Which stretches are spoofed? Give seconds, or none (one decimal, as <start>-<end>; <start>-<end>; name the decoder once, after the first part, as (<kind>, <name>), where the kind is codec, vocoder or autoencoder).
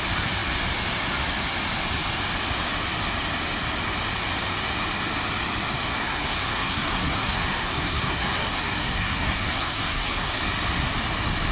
6.0-10.4 (codec, SNAC)